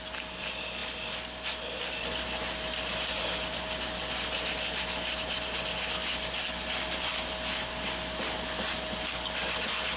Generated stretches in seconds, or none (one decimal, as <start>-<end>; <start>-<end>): 0.8-3.2

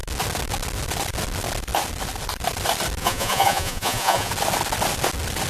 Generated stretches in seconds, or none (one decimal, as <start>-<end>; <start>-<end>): 3.0-4.3

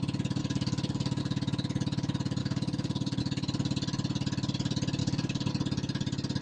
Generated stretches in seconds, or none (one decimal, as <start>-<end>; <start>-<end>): 0.4-1.2; 2.4-3.2; 5.0-5.5

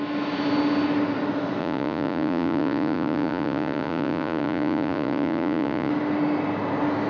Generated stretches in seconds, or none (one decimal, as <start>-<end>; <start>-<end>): 1.6-5.9

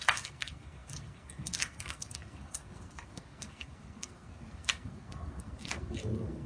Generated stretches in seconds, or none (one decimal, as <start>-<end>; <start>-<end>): 0.0-6.5

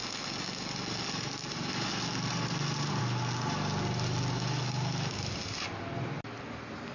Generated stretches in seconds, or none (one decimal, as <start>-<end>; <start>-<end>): none

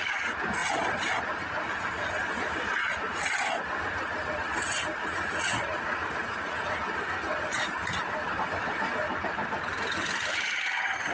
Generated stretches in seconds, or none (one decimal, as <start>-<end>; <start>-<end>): 2.8-3.4; 5.0-6.7

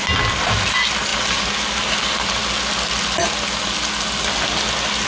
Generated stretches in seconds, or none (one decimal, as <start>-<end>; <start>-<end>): none